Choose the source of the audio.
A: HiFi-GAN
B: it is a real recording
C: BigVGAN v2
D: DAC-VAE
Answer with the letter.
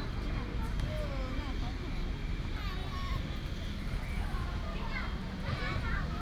B